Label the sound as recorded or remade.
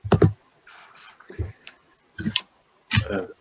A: recorded